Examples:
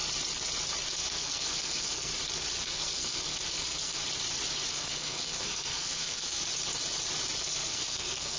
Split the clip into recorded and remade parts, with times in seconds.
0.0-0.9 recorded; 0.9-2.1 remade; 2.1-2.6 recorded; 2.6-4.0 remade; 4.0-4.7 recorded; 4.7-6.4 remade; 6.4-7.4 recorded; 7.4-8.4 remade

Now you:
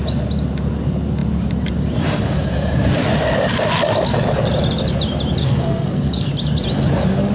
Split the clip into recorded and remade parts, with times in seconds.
0.0-5.4 recorded; 5.4-6.3 remade; 6.3-7.3 recorded

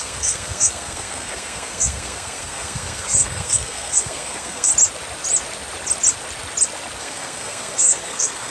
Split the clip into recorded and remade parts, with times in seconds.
0.0-4.7 remade; 4.7-7.0 recorded; 7.0-8.5 remade

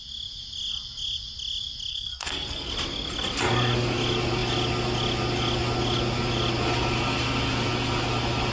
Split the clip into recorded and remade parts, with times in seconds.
0.0-1.9 recorded; 1.9-2.7 remade; 2.7-8.5 recorded

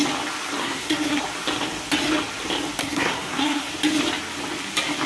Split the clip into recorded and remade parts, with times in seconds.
0.0-0.6 recorded; 0.6-1.2 remade; 1.2-2.8 recorded; 2.8-3.7 remade; 3.7-5.1 recorded